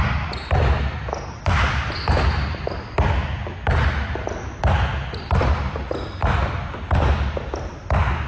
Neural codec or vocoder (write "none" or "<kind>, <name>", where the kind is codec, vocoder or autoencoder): none